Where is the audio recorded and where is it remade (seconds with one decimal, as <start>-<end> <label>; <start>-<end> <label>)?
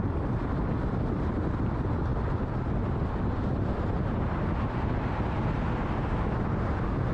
0.0-7.1 recorded